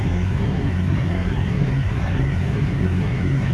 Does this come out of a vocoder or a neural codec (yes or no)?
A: yes